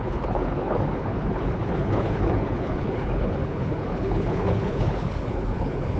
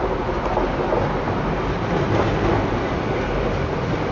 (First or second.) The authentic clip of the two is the second